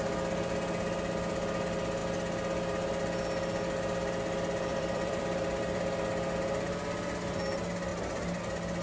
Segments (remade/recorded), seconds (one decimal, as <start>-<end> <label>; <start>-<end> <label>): 0.0-4.7 recorded; 4.7-5.8 remade; 5.8-7.9 recorded; 7.9-8.4 remade; 8.4-8.8 recorded